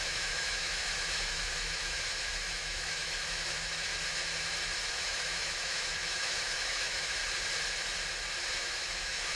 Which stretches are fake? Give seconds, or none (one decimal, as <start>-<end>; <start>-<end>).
0.0-3.9; 4.9-7.2; 8.5-9.4